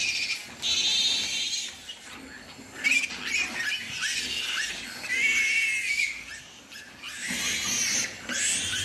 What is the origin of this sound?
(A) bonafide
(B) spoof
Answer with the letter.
A